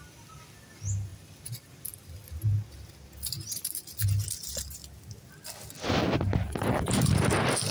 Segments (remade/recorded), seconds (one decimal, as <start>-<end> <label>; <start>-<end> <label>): 0.0-7.7 recorded

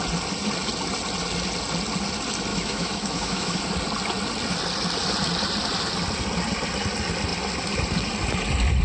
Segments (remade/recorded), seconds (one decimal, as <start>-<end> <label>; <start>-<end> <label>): 0.0-2.5 recorded; 2.5-3.6 remade; 3.6-8.8 recorded

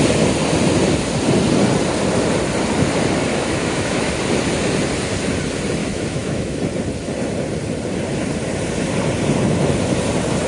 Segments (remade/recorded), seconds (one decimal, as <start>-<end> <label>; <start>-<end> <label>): 0.0-3.3 recorded; 3.3-4.1 remade; 4.1-5.8 recorded; 5.8-6.6 remade; 6.6-10.5 recorded

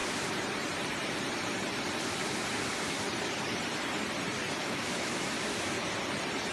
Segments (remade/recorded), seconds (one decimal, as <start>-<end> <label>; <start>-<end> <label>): 0.0-4.6 recorded; 4.6-5.2 remade; 5.2-6.5 recorded

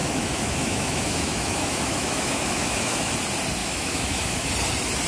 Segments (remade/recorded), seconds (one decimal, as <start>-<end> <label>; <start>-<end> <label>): 0.0-3.1 remade; 3.1-3.6 recorded; 3.6-4.5 remade; 4.5-5.1 recorded

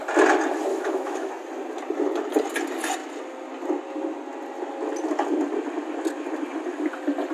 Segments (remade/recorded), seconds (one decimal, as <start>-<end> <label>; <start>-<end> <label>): 0.0-0.7 recorded; 0.7-1.3 remade; 1.3-7.3 recorded

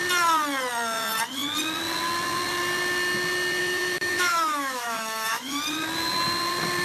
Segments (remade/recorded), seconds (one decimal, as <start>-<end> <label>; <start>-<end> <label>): 0.0-3.6 recorded; 3.6-5.6 remade; 5.6-6.8 recorded